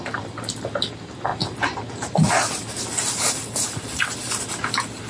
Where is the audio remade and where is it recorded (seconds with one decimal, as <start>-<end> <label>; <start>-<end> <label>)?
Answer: 0.0-5.1 recorded